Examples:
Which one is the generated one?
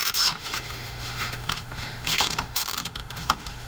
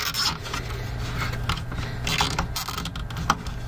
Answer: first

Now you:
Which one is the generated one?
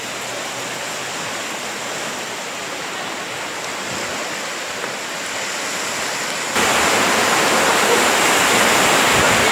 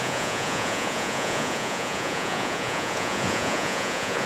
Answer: second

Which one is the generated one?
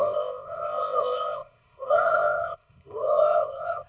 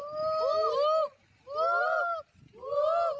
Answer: first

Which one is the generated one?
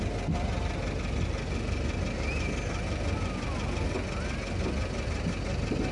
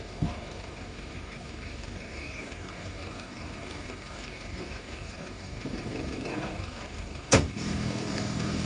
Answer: second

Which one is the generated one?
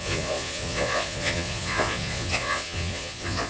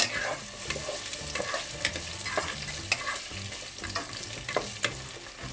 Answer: first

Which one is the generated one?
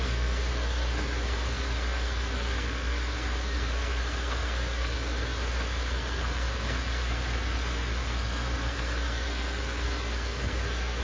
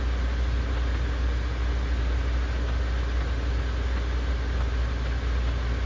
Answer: first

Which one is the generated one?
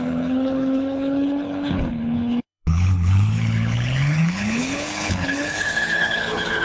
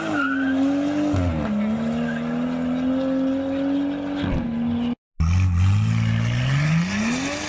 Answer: first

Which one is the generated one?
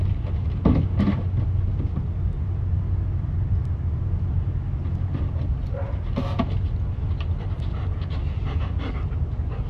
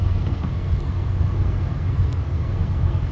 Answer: second